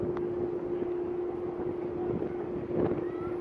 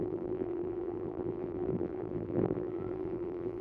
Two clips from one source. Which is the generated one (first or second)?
second